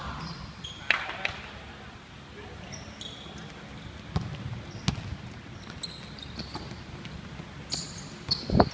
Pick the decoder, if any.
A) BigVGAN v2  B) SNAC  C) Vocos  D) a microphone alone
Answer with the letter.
D